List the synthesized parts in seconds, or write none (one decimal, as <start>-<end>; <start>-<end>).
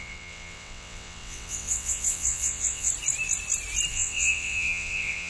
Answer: 0.0-2.9; 3.9-5.3